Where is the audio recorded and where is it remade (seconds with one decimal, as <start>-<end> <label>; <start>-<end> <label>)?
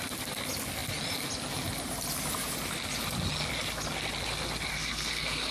0.0-4.7 recorded; 4.7-5.5 remade